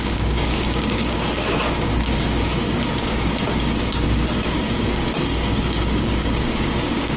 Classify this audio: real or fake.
fake